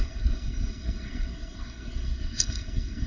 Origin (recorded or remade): remade